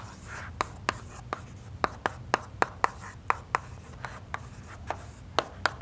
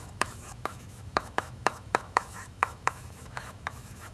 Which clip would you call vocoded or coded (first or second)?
second